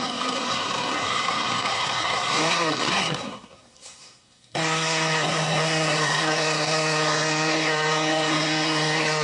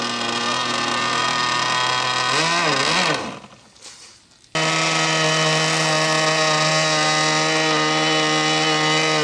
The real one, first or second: second